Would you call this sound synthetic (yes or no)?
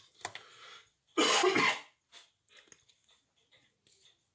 no